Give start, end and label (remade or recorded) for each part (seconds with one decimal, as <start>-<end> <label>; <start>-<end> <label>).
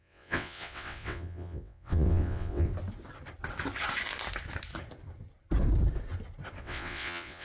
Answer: 0.0-2.7 remade; 2.7-6.6 recorded; 6.6-7.4 remade